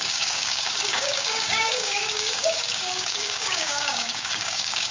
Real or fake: fake